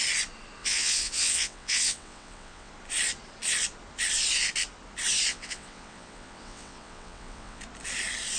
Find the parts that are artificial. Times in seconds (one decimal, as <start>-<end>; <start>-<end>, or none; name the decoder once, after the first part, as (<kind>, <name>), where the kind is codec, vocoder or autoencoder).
0.6-2.7 (vocoder, WaveNeXt); 5.3-7.6